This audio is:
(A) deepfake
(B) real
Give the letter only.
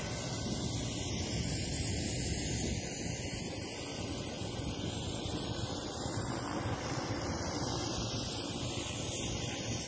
B